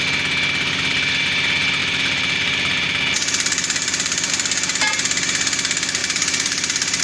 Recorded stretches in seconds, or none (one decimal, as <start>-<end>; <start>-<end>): 0.0-1.8; 4.3-6.0